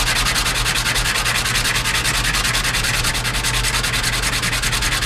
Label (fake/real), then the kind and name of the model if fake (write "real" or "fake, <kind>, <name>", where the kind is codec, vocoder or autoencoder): real